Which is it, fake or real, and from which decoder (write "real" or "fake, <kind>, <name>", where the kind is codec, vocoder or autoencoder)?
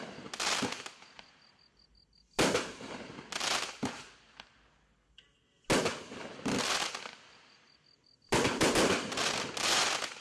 real